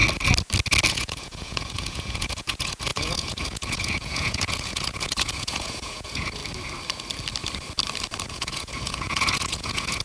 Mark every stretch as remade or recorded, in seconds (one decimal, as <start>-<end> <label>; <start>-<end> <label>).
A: 0.0-0.9 recorded; 0.9-6.4 remade; 6.4-8.3 recorded; 8.3-10.0 remade